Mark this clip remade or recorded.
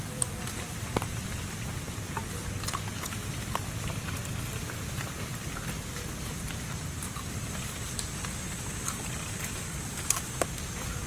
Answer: recorded